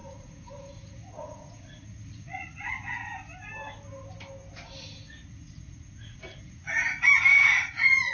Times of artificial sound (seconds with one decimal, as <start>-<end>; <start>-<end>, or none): 0.0-3.1; 5.3-6.8; 7.3-8.1